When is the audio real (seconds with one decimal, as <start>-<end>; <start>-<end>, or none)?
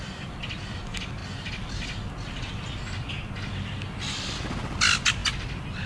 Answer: 0.0-5.9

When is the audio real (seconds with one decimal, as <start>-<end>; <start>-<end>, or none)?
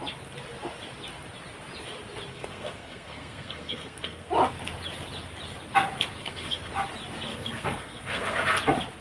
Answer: 0.0-2.3; 4.3-6.1; 6.7-7.3; 8.4-9.0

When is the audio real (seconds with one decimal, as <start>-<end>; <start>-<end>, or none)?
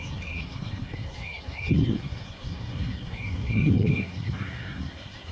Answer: none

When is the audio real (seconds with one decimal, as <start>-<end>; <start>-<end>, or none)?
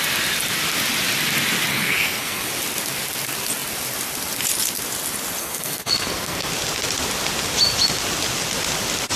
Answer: 0.0-1.7; 2.5-5.4; 6.5-9.2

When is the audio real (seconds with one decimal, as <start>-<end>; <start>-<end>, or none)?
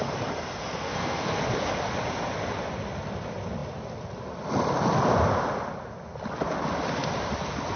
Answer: 0.0-0.6; 1.4-7.8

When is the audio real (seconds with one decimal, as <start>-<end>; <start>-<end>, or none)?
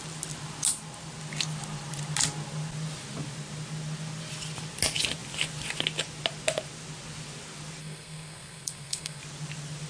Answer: 0.0-7.8; 9.2-9.9